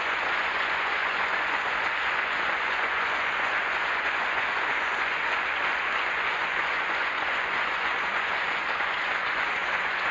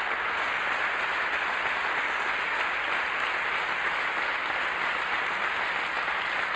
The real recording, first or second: second